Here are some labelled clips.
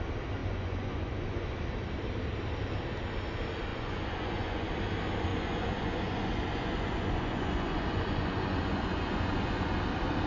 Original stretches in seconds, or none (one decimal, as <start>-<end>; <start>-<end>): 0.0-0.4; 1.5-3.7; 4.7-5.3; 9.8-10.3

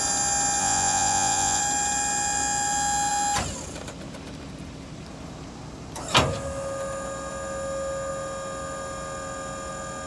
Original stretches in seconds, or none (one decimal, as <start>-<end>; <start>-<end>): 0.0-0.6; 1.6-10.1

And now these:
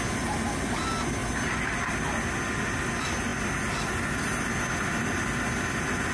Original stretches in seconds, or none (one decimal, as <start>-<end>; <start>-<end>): 0.0-6.1

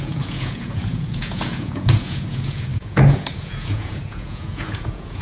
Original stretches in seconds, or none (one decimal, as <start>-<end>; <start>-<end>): none